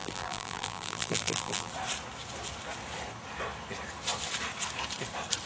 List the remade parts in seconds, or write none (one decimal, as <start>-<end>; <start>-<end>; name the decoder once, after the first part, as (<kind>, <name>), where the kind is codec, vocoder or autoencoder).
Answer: 0.0-1.7 (vocoder, BigVGAN v2)